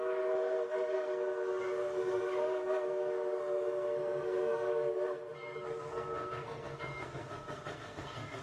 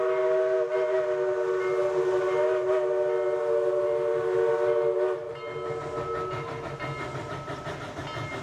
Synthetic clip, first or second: first